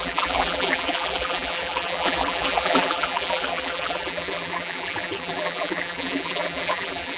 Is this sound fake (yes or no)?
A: yes